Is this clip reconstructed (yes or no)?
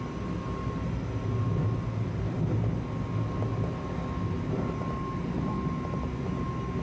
no